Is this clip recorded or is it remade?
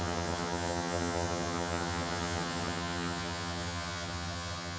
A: remade